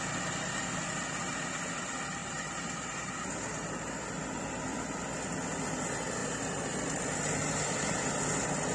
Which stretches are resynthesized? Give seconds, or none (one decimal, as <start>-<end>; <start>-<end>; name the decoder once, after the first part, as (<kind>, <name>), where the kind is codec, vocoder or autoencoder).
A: 2.2-3.9 (vocoder, BigVGAN v2); 6.2-6.8; 7.4-8.1